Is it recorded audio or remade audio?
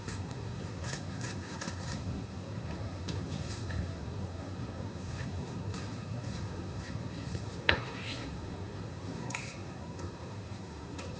remade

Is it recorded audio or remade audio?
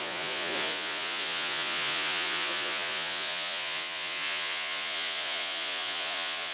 remade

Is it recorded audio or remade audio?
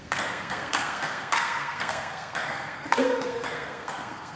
remade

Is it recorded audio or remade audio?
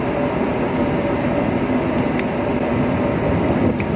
recorded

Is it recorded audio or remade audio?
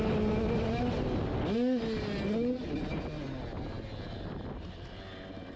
recorded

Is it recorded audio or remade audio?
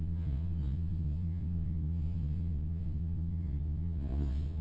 remade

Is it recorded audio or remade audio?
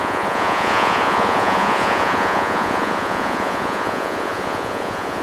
remade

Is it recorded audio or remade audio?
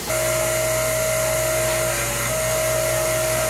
recorded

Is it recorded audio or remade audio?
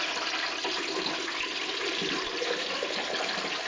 recorded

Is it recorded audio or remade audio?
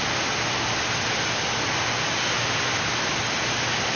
recorded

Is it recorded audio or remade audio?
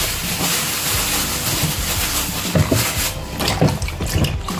recorded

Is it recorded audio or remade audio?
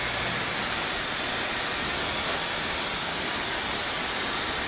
recorded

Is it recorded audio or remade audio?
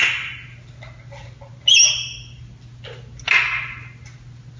recorded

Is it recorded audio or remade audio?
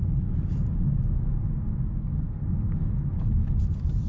recorded